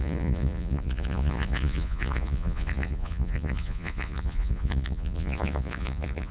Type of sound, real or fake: fake